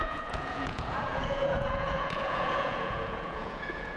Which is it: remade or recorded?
remade